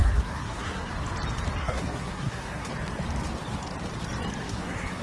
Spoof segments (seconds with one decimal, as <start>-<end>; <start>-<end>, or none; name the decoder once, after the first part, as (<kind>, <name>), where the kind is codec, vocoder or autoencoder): 0.0-0.9 (codec, SNAC); 1.6-2.7; 4.4-5.0